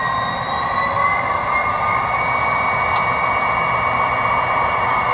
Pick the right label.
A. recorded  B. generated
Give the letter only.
A